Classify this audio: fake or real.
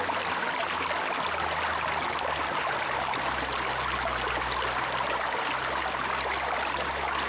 real